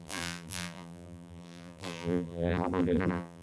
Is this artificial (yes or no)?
yes